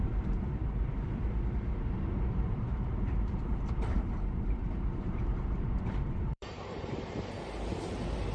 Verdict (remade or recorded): remade